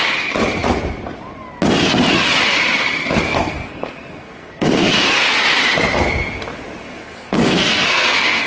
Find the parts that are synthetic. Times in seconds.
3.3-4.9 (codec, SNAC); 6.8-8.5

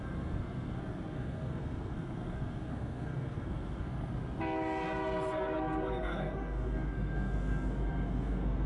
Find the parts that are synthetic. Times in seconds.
0.0-4.1 (codec, SNAC); 6.0-8.7